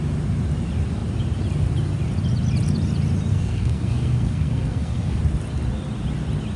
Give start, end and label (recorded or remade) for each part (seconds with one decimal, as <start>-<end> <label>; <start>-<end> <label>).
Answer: 0.0-3.3 recorded; 3.3-5.2 remade; 5.2-6.6 recorded